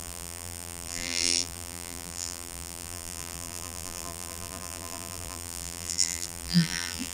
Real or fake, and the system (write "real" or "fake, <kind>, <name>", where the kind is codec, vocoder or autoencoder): fake, vocoder, BigVGAN v2